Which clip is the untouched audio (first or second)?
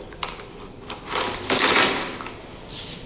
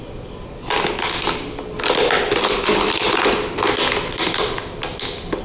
second